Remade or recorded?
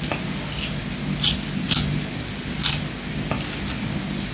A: recorded